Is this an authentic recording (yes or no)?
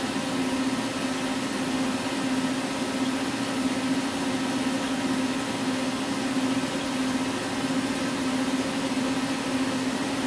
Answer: yes